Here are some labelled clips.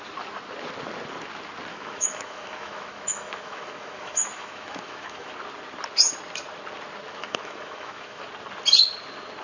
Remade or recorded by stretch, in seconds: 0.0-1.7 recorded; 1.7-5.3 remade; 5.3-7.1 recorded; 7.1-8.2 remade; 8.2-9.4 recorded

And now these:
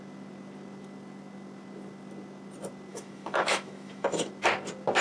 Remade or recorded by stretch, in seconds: 0.0-2.9 recorded; 2.9-4.3 remade; 4.3-5.0 recorded

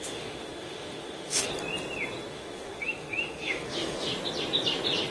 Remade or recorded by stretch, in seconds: 0.0-1.5 remade; 1.5-2.3 recorded; 2.3-4.1 remade; 4.1-5.1 recorded

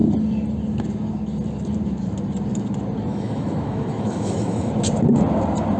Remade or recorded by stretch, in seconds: 0.0-3.1 recorded; 3.1-4.7 remade; 4.7-5.8 recorded

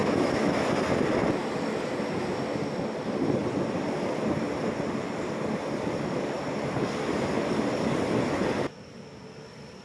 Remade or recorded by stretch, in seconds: 0.0-0.7 remade; 0.7-9.8 recorded

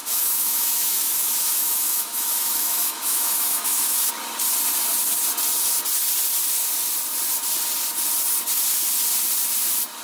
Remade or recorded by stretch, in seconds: 0.0-4.1 remade; 4.1-10.0 recorded

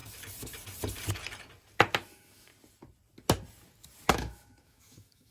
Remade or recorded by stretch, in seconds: 0.0-2.1 recorded; 2.1-2.5 remade; 2.5-4.1 recorded; 4.1-5.3 remade

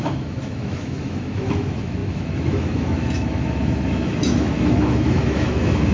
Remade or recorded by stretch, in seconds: 0.0-5.9 remade